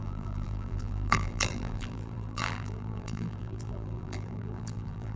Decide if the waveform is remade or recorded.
remade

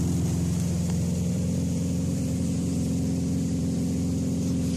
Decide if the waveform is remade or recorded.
remade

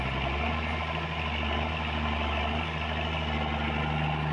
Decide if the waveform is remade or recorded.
recorded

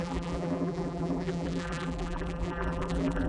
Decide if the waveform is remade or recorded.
remade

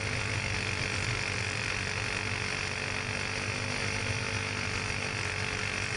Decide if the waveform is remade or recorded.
recorded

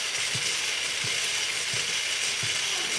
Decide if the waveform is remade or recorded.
recorded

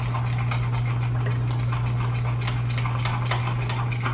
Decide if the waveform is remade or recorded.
recorded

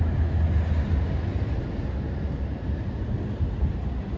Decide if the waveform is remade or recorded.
recorded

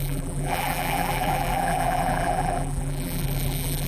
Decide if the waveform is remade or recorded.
remade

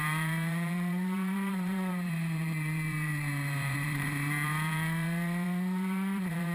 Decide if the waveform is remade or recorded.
remade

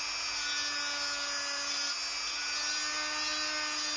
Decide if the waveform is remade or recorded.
recorded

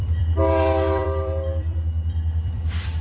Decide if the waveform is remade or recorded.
remade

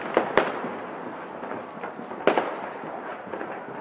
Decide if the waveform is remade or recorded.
recorded